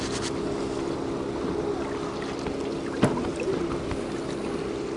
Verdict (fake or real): real